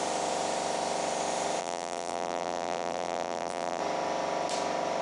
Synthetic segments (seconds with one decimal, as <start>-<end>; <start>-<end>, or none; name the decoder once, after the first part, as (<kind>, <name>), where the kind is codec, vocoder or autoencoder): 1.6-3.8 (vocoder, BigVGAN v2)